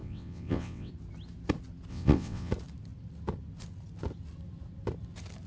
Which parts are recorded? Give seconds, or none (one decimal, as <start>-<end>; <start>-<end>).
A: 0.9-1.9; 2.5-5.5